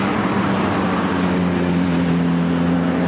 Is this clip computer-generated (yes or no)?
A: no